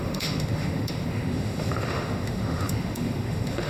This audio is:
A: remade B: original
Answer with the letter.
A